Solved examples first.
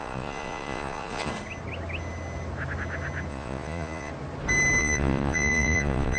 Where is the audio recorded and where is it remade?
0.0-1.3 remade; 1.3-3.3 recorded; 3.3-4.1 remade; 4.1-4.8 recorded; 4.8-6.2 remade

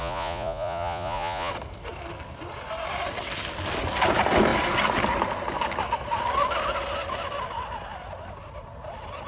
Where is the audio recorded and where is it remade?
0.0-1.5 remade; 1.5-9.3 recorded

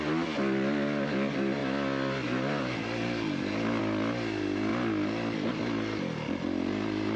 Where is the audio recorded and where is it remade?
0.0-7.2 recorded

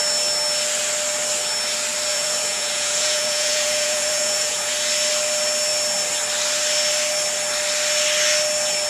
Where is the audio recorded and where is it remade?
0.0-2.1 recorded; 2.1-4.7 remade; 4.7-8.9 recorded